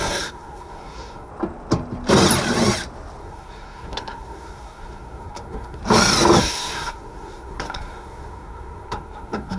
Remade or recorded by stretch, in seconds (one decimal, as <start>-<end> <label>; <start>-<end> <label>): 0.0-1.3 remade; 1.3-3.2 recorded; 3.2-5.8 remade; 5.8-6.4 recorded; 6.4-9.6 remade